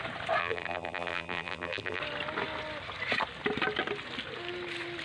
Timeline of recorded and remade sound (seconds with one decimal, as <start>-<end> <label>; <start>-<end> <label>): 0.0-0.4 recorded; 0.4-2.0 remade; 2.0-5.0 recorded